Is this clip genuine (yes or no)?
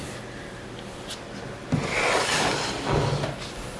yes